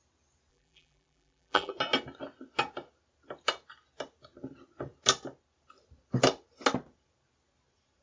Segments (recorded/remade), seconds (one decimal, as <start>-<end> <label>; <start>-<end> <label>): 0.0-0.5 recorded; 0.5-1.7 remade; 1.7-8.0 recorded

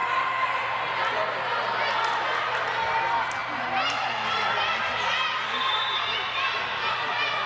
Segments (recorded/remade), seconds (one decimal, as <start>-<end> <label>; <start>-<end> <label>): 0.0-7.5 recorded